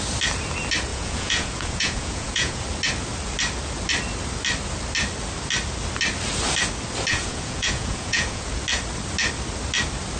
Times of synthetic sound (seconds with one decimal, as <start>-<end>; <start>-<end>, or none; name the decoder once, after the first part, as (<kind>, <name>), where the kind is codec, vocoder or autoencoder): 0.9-2.6 (vocoder, Vocos); 7.1-8.6